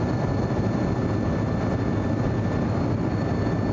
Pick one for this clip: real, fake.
real